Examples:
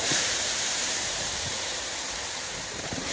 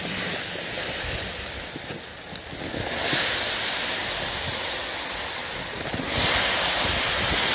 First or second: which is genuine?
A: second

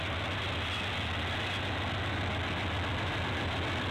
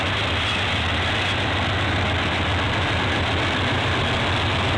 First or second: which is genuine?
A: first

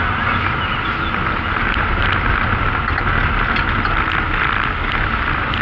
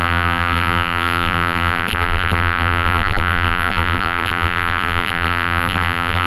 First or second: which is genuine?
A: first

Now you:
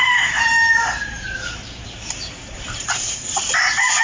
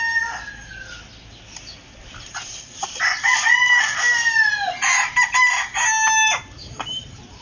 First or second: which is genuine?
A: second